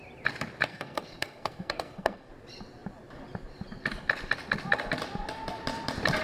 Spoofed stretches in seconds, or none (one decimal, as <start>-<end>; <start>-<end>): 0.7-2.3